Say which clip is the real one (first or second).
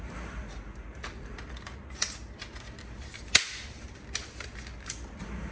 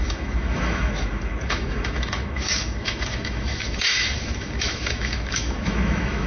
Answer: first